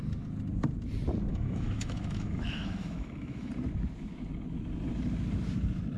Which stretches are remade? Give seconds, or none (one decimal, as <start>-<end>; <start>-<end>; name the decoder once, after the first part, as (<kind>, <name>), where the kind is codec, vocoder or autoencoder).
1.3-3.5 (autoencoder, DAC-VAE)